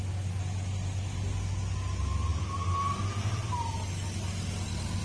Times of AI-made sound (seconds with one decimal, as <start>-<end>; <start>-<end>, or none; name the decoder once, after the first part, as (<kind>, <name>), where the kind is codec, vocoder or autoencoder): none